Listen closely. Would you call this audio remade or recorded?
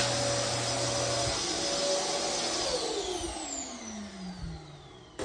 recorded